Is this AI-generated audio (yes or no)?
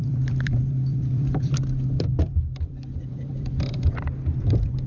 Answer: yes